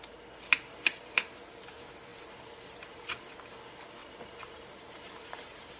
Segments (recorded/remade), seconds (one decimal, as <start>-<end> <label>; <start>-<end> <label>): 0.0-4.0 recorded; 4.0-5.8 remade